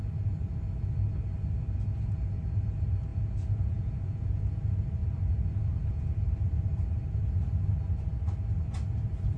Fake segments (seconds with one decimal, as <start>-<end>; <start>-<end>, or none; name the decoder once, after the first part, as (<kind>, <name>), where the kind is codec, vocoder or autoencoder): 3.1-4.4 (vocoder, Vocos)